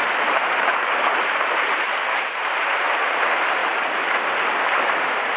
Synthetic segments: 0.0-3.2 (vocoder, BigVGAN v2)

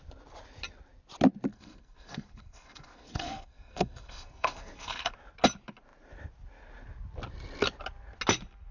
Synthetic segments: 1.5-5.1 (codec, SNAC)